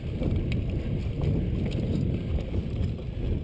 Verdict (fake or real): real